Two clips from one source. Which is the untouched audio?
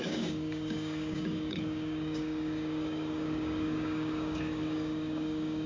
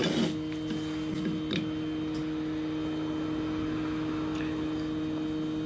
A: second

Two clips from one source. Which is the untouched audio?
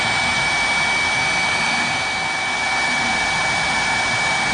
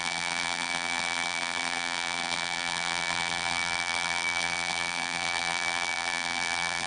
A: first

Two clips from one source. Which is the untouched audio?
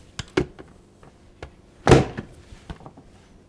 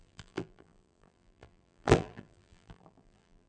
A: first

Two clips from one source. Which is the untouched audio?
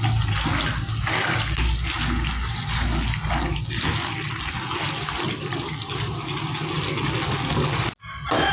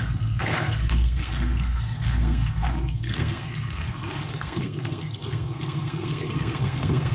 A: first